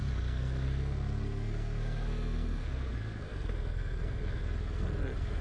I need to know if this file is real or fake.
fake